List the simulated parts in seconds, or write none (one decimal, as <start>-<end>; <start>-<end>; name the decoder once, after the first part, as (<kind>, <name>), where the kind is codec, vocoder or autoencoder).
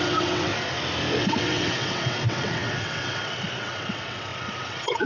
0.0-0.5 (vocoder, WaveNeXt); 1.2-5.1